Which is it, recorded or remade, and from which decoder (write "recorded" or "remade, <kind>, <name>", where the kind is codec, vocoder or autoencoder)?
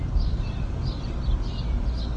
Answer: recorded